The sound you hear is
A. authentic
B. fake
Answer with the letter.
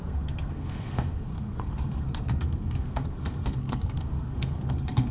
B